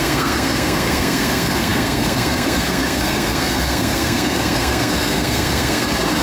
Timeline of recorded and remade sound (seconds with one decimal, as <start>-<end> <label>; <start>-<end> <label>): 0.0-6.2 remade